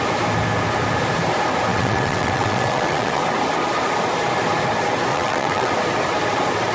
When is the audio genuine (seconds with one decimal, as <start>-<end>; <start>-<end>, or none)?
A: 0.0-1.7; 3.2-5.1; 5.7-6.7